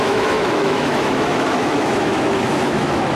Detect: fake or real fake